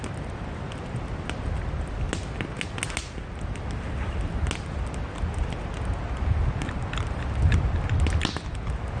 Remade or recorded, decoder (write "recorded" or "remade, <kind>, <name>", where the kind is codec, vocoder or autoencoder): recorded